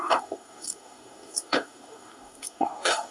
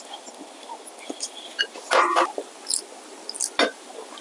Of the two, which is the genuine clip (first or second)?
second